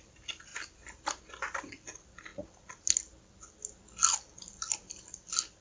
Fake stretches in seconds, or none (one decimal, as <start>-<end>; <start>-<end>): none